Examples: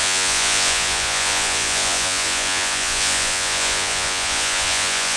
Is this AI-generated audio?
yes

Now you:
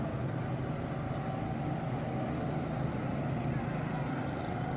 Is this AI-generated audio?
no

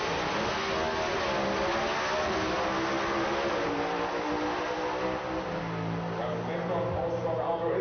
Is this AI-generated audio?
no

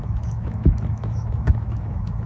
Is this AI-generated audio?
yes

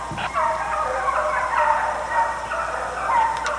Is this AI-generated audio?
no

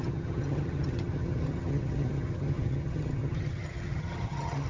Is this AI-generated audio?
yes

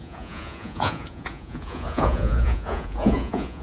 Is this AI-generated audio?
yes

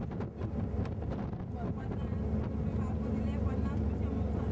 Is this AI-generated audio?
no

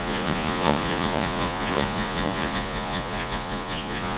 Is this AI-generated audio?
yes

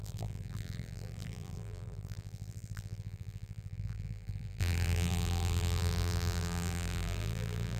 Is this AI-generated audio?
yes